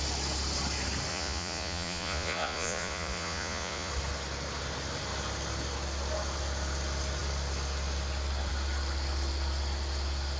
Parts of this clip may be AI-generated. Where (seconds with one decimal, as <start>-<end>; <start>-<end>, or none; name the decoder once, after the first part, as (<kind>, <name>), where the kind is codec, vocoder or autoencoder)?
1.1-3.9 (vocoder, Vocos)